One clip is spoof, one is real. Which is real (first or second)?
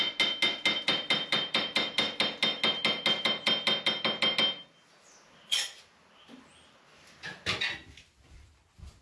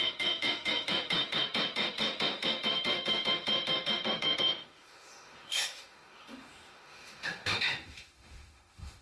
first